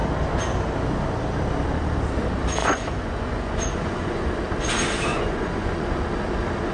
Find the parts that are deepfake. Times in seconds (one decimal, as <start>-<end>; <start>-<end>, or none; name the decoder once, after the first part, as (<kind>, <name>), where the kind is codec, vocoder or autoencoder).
2.6-4.3 (vocoder, Vocos); 5.1-6.0